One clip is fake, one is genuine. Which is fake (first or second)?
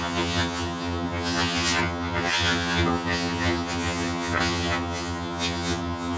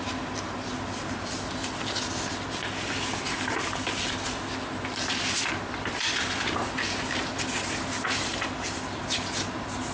first